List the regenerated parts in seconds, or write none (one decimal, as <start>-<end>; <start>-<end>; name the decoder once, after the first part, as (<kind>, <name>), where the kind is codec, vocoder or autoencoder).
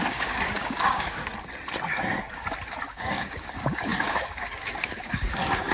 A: 0.0-1.3 (codec, DAC); 2.9-5.7